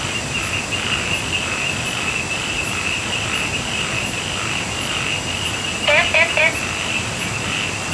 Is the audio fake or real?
real